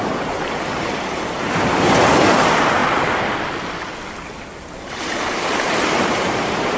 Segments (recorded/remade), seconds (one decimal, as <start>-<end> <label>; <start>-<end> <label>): 0.0-2.8 remade; 2.8-5.3 recorded; 5.3-6.8 remade

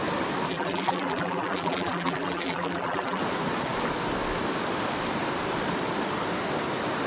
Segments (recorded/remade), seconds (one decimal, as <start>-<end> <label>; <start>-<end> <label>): 0.0-0.5 recorded; 0.5-3.2 remade; 3.2-7.1 recorded

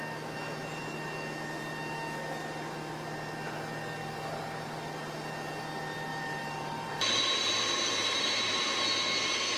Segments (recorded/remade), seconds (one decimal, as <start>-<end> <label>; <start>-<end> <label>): 0.0-6.1 recorded; 6.1-8.6 remade; 8.6-9.6 recorded

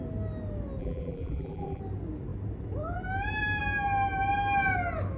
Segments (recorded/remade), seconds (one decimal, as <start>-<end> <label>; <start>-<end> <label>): 0.0-0.8 recorded; 0.8-1.8 remade; 1.8-5.2 recorded

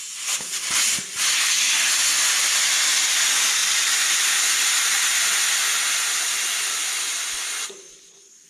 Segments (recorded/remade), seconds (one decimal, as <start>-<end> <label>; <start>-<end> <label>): 0.0-3.6 recorded; 3.6-4.3 remade; 4.3-8.5 recorded